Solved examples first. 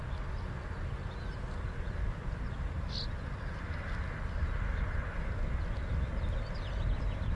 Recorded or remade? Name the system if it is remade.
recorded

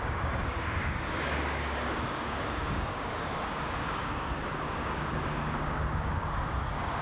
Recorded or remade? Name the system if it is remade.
remade, codec, DAC